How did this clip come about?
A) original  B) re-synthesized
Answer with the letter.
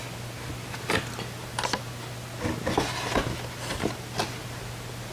A